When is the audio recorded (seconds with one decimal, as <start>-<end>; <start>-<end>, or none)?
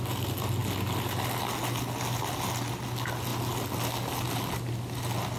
0.0-5.4